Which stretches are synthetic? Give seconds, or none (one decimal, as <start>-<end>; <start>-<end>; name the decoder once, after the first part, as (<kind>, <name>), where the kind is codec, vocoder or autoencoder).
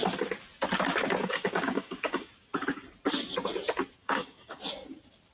1.2-2.3 (codec, DAC); 4.0-4.6